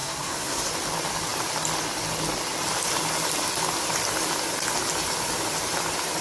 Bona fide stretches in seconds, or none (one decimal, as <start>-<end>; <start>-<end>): 0.7-6.2

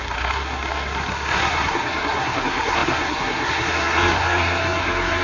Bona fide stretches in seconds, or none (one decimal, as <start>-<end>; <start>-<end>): none

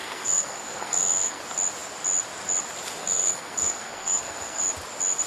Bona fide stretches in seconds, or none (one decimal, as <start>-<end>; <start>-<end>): 1.4-3.0; 4.6-5.3

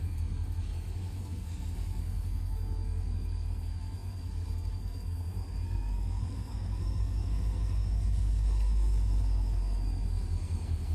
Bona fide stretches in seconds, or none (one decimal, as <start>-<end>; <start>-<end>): none

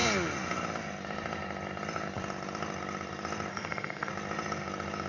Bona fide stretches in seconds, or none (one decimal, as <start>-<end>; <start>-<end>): 0.0-3.5; 4.1-5.1